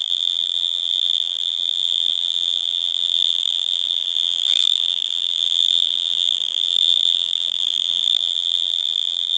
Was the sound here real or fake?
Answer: fake